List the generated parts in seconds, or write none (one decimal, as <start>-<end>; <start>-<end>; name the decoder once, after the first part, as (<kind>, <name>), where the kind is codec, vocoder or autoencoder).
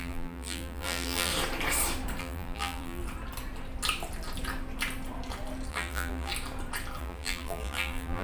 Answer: 0.0-1.3 (vocoder, BigVGAN v2); 2.2-3.0; 5.7-6.3; 7.0-8.2